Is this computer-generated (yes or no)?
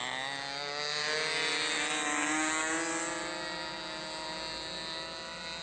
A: no